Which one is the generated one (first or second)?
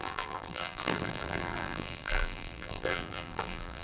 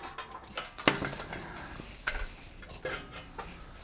first